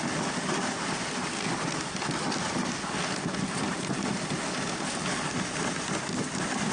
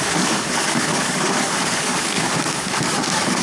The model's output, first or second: second